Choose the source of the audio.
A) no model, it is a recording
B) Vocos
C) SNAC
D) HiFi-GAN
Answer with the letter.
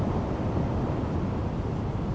A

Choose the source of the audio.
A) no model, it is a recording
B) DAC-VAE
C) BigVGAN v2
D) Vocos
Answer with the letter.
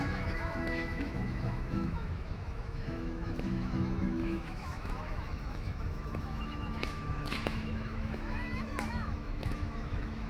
B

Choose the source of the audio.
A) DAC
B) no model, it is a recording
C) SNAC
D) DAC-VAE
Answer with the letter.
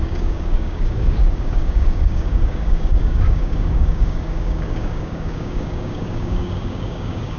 A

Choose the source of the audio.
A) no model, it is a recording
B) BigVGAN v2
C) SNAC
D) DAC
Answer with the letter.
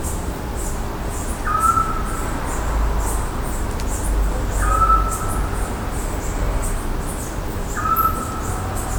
A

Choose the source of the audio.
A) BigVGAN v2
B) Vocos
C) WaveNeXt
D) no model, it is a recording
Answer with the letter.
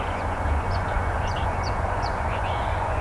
B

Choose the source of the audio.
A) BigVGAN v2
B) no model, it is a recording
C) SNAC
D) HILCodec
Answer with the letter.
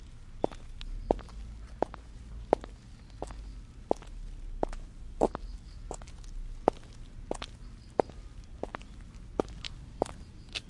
B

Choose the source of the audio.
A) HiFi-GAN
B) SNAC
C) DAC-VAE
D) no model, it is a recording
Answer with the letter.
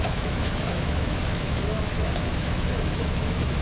C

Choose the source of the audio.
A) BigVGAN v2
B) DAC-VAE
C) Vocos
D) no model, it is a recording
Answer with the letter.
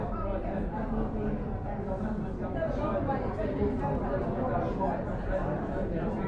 D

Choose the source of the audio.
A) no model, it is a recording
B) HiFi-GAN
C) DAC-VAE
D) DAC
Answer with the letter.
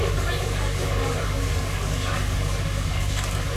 D